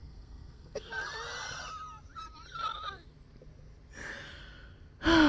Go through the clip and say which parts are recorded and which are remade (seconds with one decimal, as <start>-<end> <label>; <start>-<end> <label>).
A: 0.0-0.9 remade; 0.9-5.3 recorded